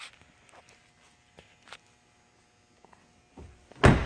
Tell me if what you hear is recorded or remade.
recorded